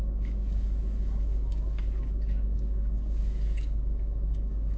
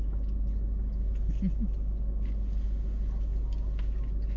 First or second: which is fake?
first